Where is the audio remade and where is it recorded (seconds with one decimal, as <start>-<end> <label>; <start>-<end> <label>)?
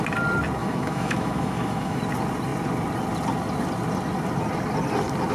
0.0-0.6 recorded; 0.6-2.0 remade; 2.0-5.3 recorded